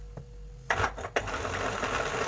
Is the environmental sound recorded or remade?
recorded